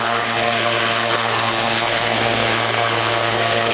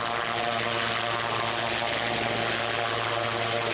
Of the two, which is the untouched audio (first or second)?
second